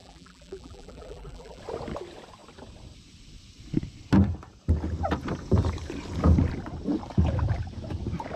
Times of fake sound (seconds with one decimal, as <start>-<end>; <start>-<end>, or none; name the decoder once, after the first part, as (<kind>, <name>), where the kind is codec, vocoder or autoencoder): 0.0-1.6 (vocoder, BigVGAN v2)